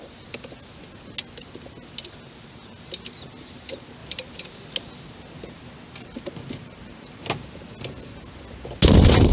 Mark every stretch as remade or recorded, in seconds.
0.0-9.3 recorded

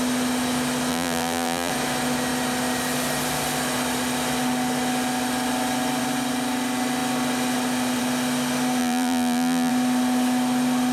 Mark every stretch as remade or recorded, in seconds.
0.0-0.9 recorded; 0.9-1.7 remade; 1.7-8.8 recorded; 8.8-9.7 remade; 9.7-10.9 recorded

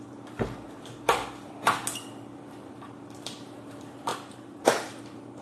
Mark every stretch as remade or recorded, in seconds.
0.0-1.2 remade; 1.2-2.1 recorded; 2.1-5.4 remade

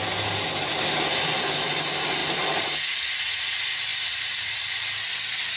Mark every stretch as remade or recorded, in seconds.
0.0-5.6 recorded

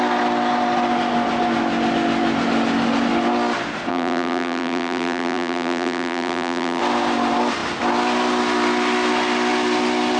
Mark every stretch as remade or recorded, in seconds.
0.0-3.9 recorded; 3.9-6.8 remade; 6.8-10.2 recorded

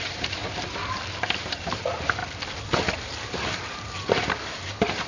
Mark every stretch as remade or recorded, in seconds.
0.0-0.4 remade; 0.4-1.0 recorded; 1.0-2.2 remade; 2.2-3.0 recorded; 3.0-5.1 remade

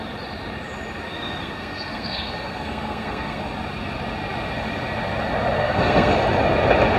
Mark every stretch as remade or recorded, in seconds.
0.0-1.1 recorded; 1.1-3.4 remade; 3.4-5.6 recorded; 5.6-6.1 remade; 6.1-7.0 recorded